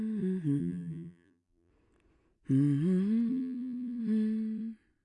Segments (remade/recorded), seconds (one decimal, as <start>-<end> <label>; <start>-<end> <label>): 0.0-0.6 recorded; 0.6-1.7 remade; 1.7-3.3 recorded; 3.3-4.0 remade; 4.0-5.0 recorded